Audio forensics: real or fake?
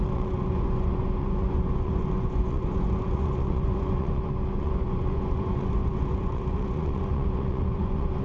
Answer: fake